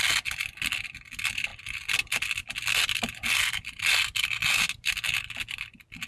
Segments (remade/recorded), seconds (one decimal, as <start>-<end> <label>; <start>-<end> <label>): 0.0-6.1 recorded